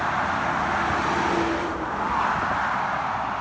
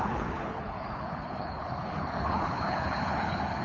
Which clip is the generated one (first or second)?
second